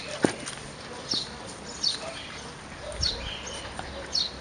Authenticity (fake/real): real